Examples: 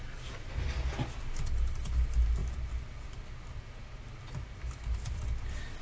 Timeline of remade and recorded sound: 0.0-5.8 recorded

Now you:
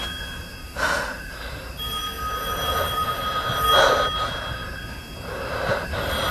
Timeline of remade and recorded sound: 0.0-6.3 recorded